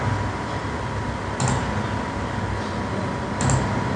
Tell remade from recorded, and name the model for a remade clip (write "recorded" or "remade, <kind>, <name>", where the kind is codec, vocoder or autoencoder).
recorded